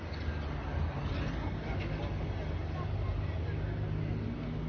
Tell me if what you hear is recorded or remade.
recorded